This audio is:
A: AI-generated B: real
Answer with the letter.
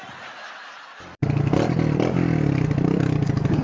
B